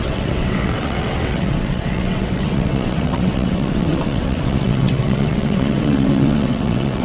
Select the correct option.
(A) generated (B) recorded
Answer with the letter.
A